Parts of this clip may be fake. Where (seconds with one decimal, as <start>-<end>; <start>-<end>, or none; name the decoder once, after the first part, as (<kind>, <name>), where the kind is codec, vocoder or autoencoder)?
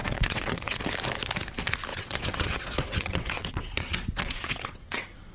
0.0-0.8 (vocoder, WaveNeXt); 1.9-5.3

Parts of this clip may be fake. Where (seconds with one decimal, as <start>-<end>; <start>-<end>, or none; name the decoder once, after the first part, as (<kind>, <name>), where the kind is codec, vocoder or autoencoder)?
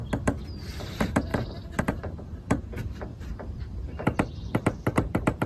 0.6-1.3 (vocoder, BigVGAN v2); 1.8-3.1; 3.6-5.5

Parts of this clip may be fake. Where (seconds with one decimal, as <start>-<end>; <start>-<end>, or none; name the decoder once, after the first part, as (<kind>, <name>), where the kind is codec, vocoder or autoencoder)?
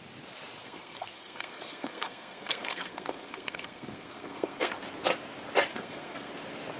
0.6-4.7 (codec, SNAC); 5.7-6.3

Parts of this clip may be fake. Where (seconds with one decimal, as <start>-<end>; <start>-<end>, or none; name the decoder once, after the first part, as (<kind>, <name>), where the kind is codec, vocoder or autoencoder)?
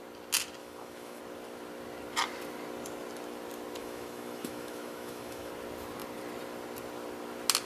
0.6-1.2 (autoencoder, DAC-VAE); 3.8-5.5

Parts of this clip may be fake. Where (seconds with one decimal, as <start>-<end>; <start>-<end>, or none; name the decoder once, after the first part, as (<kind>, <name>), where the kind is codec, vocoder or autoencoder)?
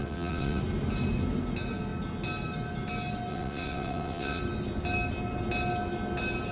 0.0-0.6 (vocoder, WaveNeXt); 3.3-4.4